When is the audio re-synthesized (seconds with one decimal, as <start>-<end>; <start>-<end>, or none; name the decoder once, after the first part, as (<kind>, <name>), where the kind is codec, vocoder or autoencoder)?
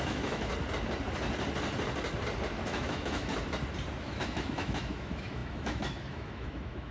0.0-0.5 (autoencoder, DAC-VAE); 2.7-3.3; 4.0-6.9